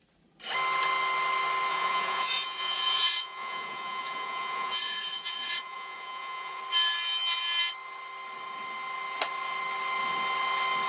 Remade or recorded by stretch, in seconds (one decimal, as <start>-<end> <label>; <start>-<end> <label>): 0.0-1.7 recorded; 1.7-6.6 remade; 6.6-10.9 recorded